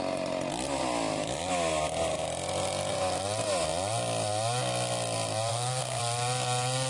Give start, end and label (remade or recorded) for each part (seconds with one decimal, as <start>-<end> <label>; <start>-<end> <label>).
0.0-5.5 recorded; 5.5-6.0 remade; 6.0-6.9 recorded